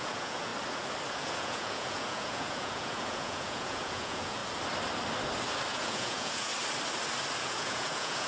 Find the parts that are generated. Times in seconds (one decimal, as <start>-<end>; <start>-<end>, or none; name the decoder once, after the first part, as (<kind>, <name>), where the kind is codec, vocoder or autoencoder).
0.0-0.5 (vocoder, Vocos); 1.1-4.4; 5.7-6.5; 7.4-8.3